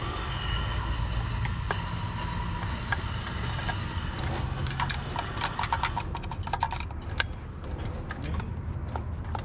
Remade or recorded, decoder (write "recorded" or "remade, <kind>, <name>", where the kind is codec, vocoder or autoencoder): recorded